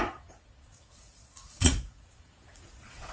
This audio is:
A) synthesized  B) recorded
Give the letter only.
A